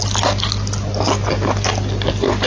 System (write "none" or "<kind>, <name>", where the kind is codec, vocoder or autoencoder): none